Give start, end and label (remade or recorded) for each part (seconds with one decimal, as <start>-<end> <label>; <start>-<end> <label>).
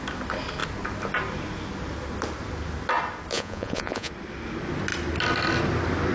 0.0-3.3 recorded; 3.3-4.1 remade; 4.1-6.1 recorded